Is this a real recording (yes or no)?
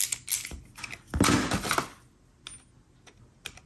yes